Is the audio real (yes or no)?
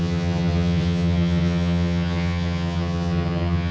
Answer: no